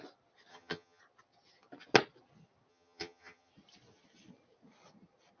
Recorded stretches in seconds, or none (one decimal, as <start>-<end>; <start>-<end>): 0.0-0.5; 1.0-2.7; 3.5-5.4

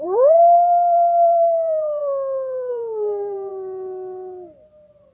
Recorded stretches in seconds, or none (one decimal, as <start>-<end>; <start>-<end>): 2.0-2.7; 3.5-5.1

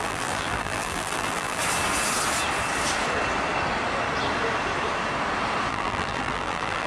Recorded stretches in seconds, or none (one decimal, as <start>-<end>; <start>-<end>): 1.6-5.7